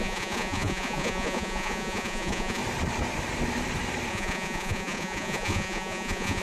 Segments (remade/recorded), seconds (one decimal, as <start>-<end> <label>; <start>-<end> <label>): 0.0-2.6 remade; 2.6-4.1 recorded; 4.1-6.4 remade